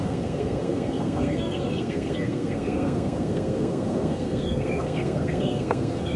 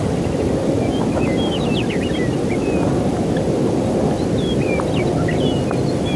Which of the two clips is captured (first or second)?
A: second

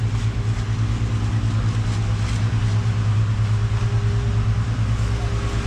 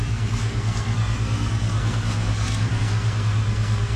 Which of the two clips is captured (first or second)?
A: first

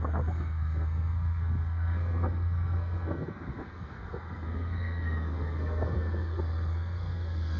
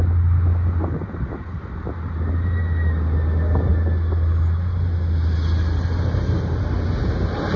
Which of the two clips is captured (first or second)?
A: second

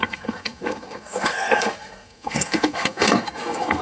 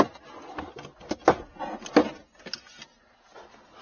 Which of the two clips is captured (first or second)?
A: second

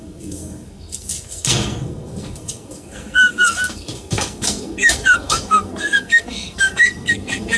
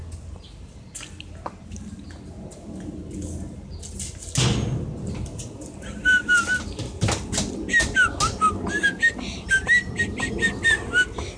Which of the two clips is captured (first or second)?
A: second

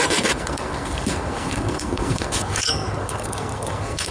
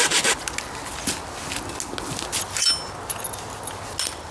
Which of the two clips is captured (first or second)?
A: second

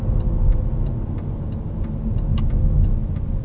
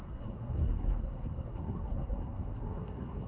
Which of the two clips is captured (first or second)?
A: first